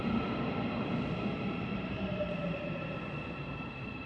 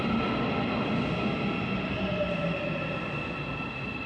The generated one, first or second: first